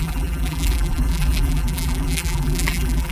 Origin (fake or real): fake